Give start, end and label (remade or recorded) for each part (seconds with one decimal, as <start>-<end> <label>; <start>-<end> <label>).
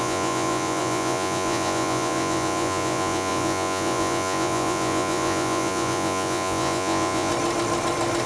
0.0-7.3 remade; 7.3-8.3 recorded